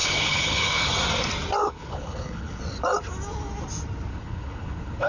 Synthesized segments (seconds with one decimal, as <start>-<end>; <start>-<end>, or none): 0.0-0.9; 1.6-2.6; 4.1-5.1